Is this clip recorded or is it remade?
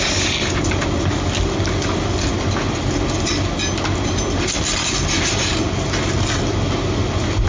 recorded